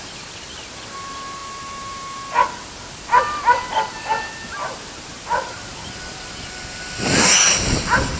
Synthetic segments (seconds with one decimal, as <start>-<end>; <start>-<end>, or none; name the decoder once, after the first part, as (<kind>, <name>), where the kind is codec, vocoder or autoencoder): none